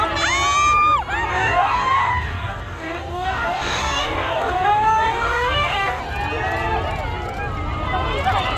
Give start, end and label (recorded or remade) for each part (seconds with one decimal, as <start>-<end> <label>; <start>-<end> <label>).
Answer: 0.0-1.3 recorded; 1.3-6.0 remade; 6.0-8.6 recorded